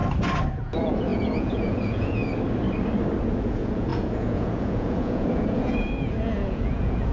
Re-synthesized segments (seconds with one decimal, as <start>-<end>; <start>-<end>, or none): 0.6-2.2; 3.2-7.1